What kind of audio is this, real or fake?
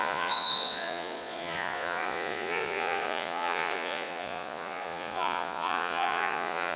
fake